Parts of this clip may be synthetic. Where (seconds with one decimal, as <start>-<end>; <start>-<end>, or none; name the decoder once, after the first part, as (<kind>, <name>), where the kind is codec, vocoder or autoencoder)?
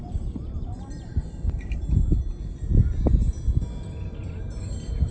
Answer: 0.0-2.0 (vocoder, BigVGAN v2); 2.7-5.1